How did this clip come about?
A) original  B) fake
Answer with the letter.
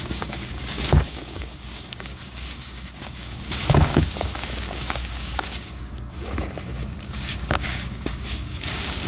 B